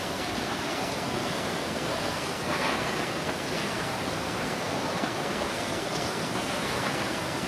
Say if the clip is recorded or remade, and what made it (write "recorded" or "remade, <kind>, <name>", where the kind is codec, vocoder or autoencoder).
remade, codec, SNAC